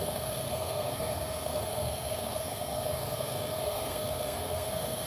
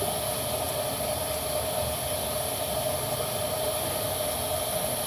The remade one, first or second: first